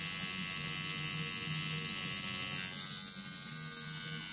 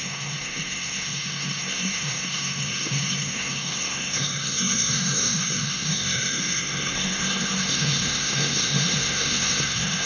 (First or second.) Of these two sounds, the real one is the first